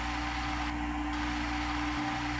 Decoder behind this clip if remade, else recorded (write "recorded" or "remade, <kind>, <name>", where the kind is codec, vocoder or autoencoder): recorded